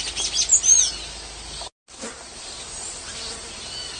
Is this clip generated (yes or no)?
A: no